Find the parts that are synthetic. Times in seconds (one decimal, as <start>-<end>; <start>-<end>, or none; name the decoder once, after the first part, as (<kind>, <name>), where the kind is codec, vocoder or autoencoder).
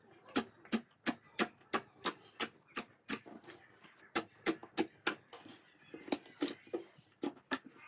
none